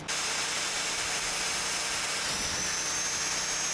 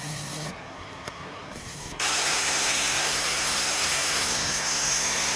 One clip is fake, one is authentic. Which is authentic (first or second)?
first